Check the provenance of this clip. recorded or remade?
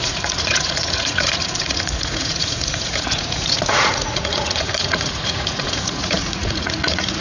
remade